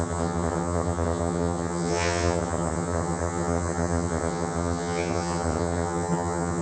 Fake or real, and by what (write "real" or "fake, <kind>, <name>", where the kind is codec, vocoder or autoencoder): fake, vocoder, HiFi-GAN